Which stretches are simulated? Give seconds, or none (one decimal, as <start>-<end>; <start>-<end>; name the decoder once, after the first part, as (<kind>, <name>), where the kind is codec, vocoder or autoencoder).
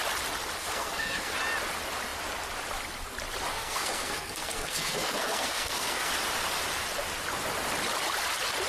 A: 0.6-1.3 (codec, SNAC); 3.5-6.1